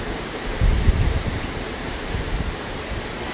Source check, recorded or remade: remade